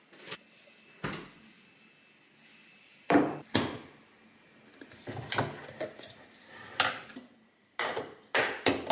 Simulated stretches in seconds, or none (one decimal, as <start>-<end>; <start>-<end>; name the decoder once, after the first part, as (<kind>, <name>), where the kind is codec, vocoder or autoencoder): 2.6-3.2 (vocoder, BigVGAN v2)